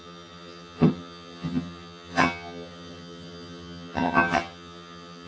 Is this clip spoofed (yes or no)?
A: yes